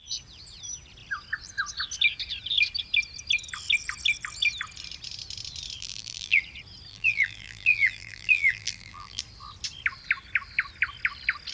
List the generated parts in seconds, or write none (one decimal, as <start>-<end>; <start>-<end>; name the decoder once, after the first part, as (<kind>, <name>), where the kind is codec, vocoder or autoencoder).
5.8-6.4 (vocoder, BigVGAN v2); 6.9-9.2